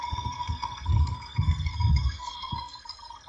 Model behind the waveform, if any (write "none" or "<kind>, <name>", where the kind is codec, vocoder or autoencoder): codec, SNAC